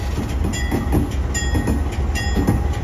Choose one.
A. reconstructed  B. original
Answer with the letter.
B